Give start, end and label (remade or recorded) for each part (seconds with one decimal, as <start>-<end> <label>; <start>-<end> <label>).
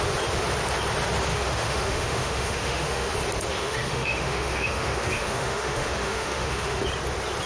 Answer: 0.0-1.3 recorded; 1.3-3.1 remade; 3.1-3.5 recorded; 3.5-6.8 remade; 6.8-7.5 recorded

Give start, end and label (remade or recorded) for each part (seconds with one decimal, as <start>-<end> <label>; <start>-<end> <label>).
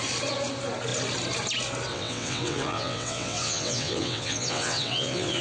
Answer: 0.0-1.9 recorded; 1.9-5.4 remade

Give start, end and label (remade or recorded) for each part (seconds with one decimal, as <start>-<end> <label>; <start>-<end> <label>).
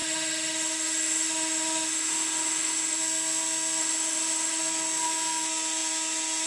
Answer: 0.0-3.0 remade; 3.0-3.8 recorded; 3.8-4.6 remade; 4.6-6.5 recorded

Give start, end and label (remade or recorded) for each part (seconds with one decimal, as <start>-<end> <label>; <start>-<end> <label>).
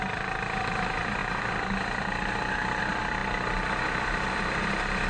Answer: 0.0-5.1 recorded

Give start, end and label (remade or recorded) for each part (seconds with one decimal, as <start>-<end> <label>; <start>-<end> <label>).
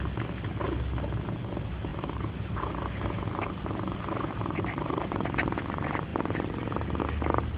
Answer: 0.0-1.9 recorded; 1.9-5.1 remade; 5.1-6.1 recorded; 6.1-6.7 remade; 6.7-7.6 recorded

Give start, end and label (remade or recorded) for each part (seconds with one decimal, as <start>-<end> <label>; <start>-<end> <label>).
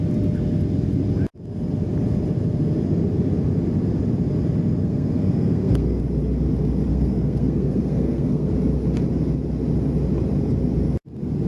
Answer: 0.0-4.8 recorded; 4.8-6.0 remade; 6.0-6.9 recorded; 6.9-8.5 remade; 8.5-11.5 recorded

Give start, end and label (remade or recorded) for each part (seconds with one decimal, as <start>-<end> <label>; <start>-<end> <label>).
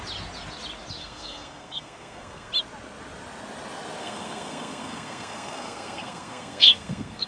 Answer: 0.0-1.0 recorded; 1.0-2.5 remade; 2.5-4.0 recorded; 4.0-7.3 remade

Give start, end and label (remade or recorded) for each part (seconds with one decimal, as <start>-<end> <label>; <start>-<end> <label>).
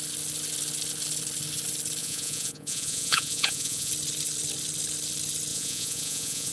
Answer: 0.0-2.0 recorded; 2.0-3.9 remade; 3.9-5.5 recorded; 5.5-6.5 remade